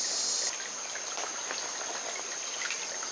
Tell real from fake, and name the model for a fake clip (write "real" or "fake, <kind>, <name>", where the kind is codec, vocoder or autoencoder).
real